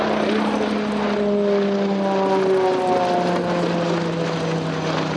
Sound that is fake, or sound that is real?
real